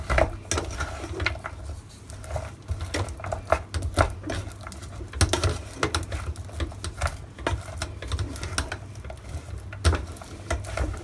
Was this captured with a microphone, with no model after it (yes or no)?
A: yes